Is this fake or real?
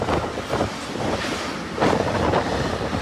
real